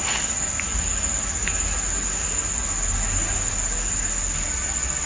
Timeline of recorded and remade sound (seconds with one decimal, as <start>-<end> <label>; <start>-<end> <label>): 0.0-0.7 recorded; 0.7-1.6 remade; 1.6-5.1 recorded